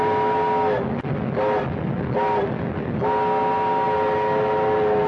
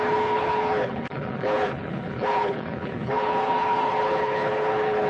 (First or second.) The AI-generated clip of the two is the second